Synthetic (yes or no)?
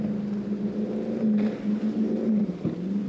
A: no